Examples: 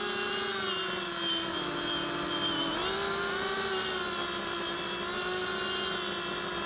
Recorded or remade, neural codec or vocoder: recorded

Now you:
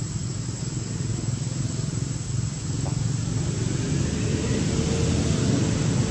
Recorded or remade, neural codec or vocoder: recorded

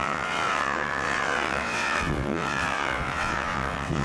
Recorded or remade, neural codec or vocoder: remade, vocoder, WaveNeXt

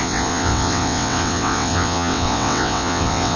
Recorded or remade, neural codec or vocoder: remade, vocoder, WaveNeXt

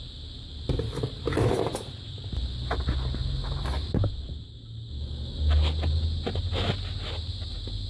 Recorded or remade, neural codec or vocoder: recorded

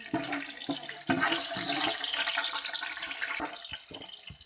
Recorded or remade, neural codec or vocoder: recorded